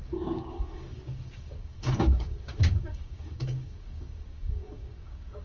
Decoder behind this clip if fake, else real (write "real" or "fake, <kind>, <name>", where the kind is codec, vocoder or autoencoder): fake, codec, DAC